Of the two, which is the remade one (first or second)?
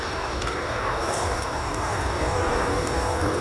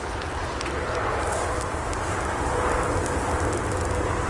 first